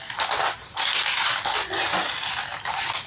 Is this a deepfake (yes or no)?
no